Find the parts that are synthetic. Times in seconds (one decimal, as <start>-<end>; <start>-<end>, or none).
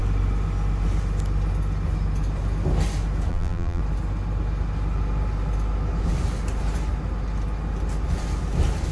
3.3-3.8